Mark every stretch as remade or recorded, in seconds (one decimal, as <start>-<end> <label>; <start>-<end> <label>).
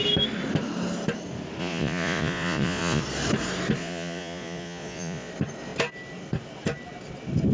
0.0-1.6 recorded; 1.6-3.0 remade; 3.0-3.8 recorded; 3.8-5.3 remade; 5.3-7.5 recorded